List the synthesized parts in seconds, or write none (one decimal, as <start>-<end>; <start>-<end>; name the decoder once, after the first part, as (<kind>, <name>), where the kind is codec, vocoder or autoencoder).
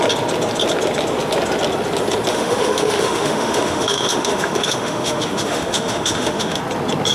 2.3-6.6 (autoencoder, DAC-VAE)